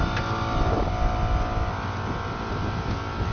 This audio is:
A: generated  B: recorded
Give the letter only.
B